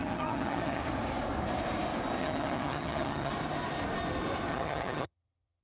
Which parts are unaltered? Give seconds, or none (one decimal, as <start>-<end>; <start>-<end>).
0.8-2.2; 3.3-4.5